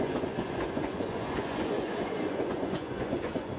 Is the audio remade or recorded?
remade